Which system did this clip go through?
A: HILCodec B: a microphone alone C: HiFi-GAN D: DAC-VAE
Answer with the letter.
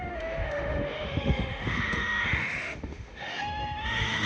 D